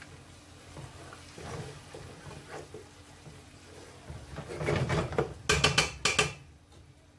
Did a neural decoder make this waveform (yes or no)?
no